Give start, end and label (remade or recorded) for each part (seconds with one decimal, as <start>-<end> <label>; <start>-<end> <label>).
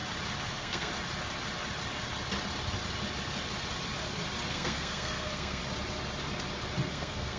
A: 0.0-0.5 recorded; 0.5-0.9 remade; 0.9-4.5 recorded; 4.5-5.6 remade; 5.6-6.9 recorded; 6.9-7.4 remade